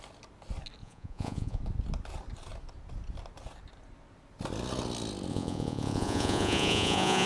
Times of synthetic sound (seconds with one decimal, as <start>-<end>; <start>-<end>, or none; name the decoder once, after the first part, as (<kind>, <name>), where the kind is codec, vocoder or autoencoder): 0.8-1.6 (vocoder, Vocos); 5.3-7.3